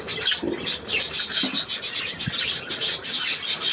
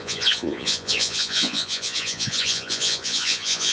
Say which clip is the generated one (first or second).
second